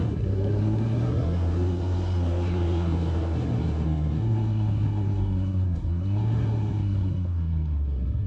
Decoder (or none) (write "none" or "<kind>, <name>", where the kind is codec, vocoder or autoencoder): codec, SNAC